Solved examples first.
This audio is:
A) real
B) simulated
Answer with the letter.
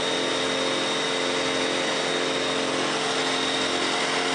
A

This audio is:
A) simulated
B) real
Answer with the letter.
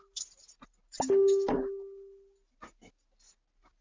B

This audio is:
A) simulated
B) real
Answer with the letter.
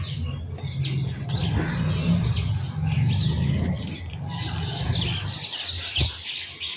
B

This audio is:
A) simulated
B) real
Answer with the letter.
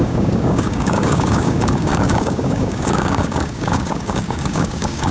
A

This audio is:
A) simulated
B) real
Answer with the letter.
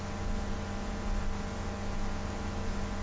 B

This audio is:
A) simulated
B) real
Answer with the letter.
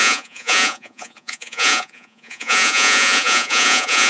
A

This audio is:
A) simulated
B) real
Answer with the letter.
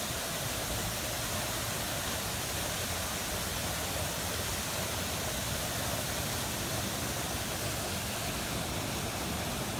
B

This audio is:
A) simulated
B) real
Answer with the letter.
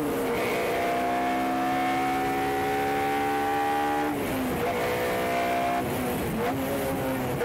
B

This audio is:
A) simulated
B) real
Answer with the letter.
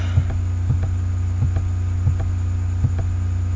B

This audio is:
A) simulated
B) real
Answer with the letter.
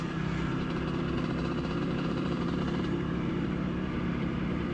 A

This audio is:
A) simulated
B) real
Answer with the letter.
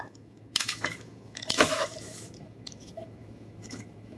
A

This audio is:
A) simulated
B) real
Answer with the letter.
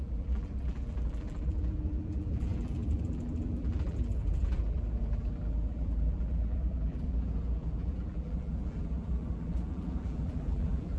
A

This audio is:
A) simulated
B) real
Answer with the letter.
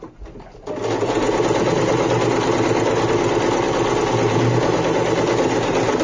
B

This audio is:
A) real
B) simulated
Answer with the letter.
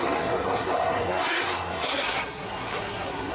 B